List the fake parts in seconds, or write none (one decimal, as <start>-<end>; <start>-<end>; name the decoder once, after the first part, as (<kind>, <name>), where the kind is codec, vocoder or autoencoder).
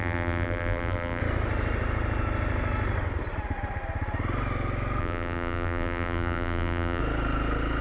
0.0-1.2 (vocoder, BigVGAN v2); 5.0-7.0